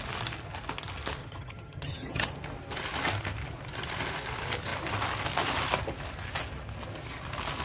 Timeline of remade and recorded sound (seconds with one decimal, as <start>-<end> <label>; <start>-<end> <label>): 0.0-1.2 recorded; 1.2-2.3 remade; 2.3-7.6 recorded